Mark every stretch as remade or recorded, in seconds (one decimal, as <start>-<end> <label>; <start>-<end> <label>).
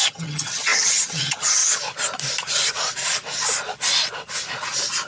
0.0-1.6 remade; 1.6-5.1 recorded